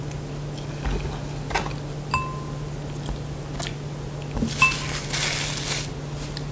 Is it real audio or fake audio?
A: real